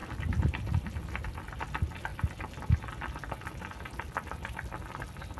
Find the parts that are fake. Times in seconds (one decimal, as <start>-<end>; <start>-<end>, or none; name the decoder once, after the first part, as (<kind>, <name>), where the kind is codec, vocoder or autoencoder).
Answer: none